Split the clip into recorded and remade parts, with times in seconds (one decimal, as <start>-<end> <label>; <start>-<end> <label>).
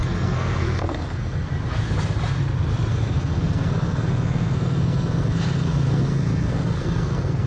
0.0-1.5 remade; 1.5-2.9 recorded; 2.9-7.5 remade